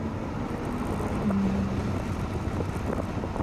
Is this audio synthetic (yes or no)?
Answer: no